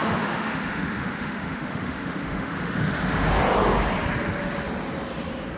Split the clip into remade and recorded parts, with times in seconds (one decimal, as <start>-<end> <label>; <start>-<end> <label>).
0.0-3.4 remade; 3.4-5.6 recorded